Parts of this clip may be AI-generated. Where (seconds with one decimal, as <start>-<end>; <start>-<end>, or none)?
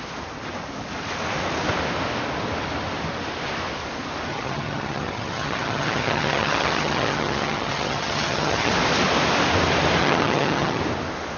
4.3-8.7; 10.0-10.8